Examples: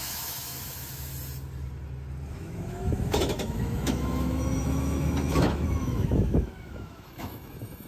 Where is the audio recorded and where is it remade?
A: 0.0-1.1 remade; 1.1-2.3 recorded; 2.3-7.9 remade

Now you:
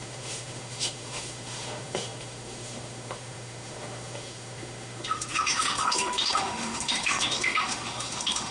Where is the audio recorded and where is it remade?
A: 0.0-8.5 remade

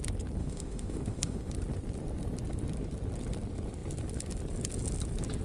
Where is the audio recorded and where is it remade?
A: 0.0-0.4 recorded; 0.4-1.5 remade; 1.5-5.4 recorded

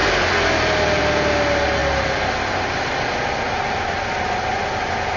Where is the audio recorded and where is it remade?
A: 0.0-5.2 recorded

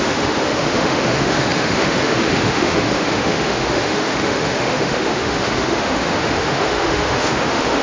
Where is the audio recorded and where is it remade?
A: 0.0-7.8 remade

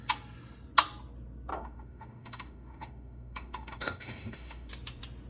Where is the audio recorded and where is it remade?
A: 0.0-1.5 recorded; 1.5-4.7 remade; 4.7-5.3 recorded

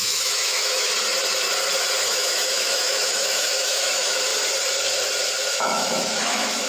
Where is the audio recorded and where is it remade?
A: 0.0-0.9 remade; 0.9-2.1 recorded; 2.1-4.3 remade; 4.3-5.5 recorded; 5.5-6.7 remade